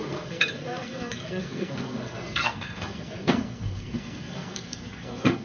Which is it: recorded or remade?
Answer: remade